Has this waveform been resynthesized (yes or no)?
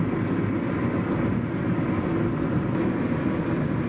no